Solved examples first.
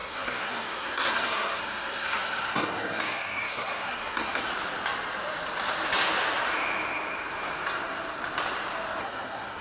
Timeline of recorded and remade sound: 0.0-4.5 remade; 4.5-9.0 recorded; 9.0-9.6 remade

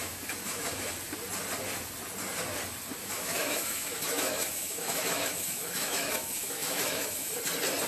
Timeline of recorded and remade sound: 0.0-0.6 remade; 0.6-3.0 recorded; 3.0-7.3 remade; 7.3-7.9 recorded

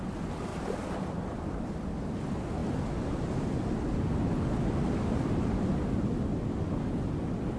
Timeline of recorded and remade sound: 0.0-0.5 recorded; 0.5-1.6 remade; 1.6-7.6 recorded

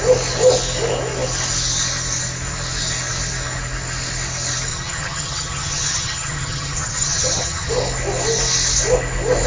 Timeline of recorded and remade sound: 0.0-4.7 recorded; 4.7-7.7 remade; 7.7-9.5 recorded

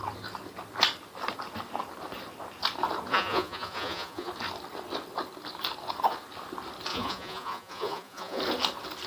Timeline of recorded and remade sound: 0.0-3.1 recorded; 3.1-4.3 remade; 4.3-6.9 recorded; 6.9-8.4 remade; 8.4-9.1 recorded

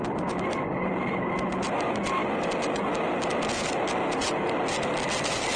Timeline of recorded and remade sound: 0.0-5.6 recorded

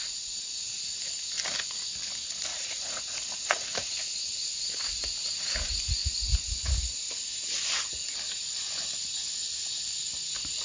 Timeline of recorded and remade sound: 0.0-2.5 recorded; 2.5-4.8 remade; 4.8-10.6 recorded

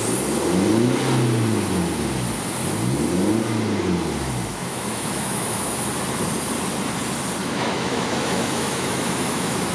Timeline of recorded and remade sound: 0.0-4.5 recorded; 4.5-5.7 remade; 5.7-7.4 recorded; 7.4-9.7 remade